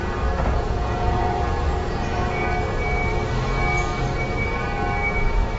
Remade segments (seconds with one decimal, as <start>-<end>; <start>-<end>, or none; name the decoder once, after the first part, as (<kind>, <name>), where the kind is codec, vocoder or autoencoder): 0.0-2.4 (vocoder, Vocos)

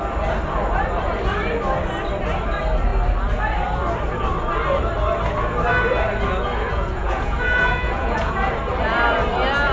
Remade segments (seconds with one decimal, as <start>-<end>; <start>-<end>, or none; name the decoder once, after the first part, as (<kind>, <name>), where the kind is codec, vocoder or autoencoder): 6.7-8.5 (vocoder, Vocos)

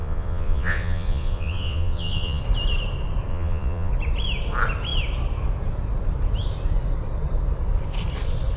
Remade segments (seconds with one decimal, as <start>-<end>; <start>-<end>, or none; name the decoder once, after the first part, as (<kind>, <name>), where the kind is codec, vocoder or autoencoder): 0.0-2.4 (vocoder, Vocos); 3.3-3.9

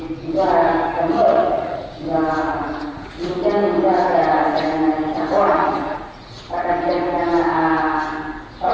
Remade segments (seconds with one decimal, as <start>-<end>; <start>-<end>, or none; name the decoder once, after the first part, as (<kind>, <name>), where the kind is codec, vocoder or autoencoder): 0.9-2.0 (vocoder, Vocos); 2.4-3.3; 5.5-6.5